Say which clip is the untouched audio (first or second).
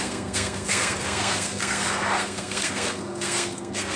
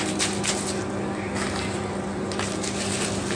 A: second